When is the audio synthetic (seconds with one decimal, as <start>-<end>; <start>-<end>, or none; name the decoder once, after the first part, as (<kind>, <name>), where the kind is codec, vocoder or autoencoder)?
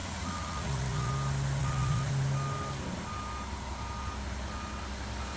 0.0-1.1 (vocoder, Vocos); 1.6-2.1